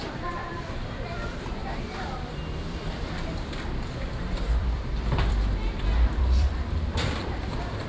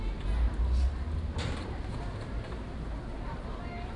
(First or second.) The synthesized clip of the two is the first